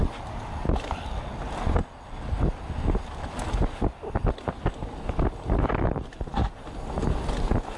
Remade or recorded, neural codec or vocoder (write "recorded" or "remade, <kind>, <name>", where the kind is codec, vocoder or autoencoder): recorded